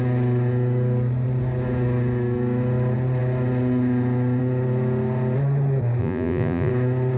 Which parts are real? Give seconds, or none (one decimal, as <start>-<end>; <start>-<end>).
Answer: 0.0-6.0; 6.7-7.2